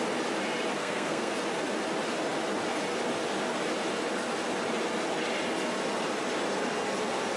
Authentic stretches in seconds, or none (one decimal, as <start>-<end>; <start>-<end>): 0.0-0.7; 1.3-7.4